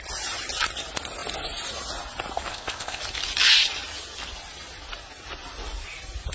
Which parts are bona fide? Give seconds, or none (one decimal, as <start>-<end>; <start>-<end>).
0.0-2.5; 3.0-6.3